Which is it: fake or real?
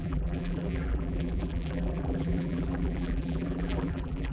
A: fake